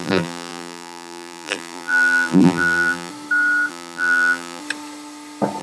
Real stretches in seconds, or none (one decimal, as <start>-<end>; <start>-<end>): 3.1-3.7; 4.6-5.6